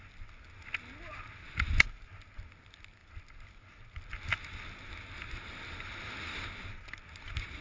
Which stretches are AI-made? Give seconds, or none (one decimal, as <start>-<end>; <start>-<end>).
none